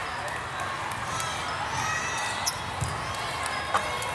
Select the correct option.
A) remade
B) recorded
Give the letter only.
B